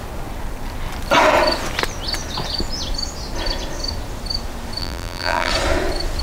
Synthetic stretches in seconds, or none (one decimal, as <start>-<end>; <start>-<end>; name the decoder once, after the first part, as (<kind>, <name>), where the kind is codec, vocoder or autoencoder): 4.8-5.5 (vocoder, BigVGAN v2)